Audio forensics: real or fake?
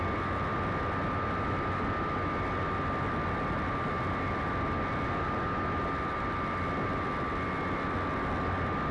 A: real